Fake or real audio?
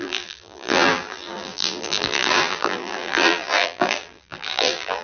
fake